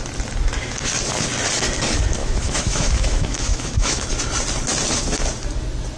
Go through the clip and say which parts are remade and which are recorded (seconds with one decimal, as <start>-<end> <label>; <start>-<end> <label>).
0.0-2.2 recorded; 2.2-4.1 remade; 4.1-6.0 recorded